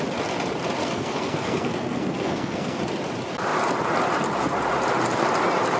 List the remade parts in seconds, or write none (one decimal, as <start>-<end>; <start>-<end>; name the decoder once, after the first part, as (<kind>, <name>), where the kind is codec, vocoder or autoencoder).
0.8-2.8 (codec, SNAC)

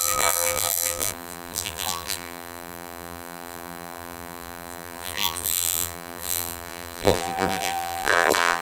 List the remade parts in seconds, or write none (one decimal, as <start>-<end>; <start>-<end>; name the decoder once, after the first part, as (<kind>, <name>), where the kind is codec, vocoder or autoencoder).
0.0-8.6 (vocoder, BigVGAN v2)

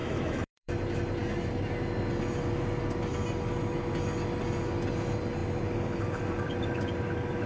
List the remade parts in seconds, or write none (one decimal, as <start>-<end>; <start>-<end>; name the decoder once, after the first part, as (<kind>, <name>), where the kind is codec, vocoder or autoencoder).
0.0-0.7 (autoencoder, DAC-VAE)

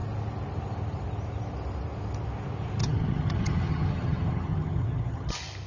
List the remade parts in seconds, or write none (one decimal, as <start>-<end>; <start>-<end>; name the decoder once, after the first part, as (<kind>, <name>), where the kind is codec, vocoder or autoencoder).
2.8-5.3 (vocoder, HiFi-GAN)

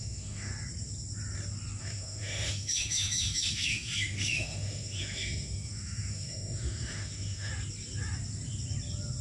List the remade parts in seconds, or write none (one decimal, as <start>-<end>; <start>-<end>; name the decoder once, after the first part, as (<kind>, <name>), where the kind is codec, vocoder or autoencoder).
0.0-0.5 (autoencoder, DAC-VAE); 1.8-7.5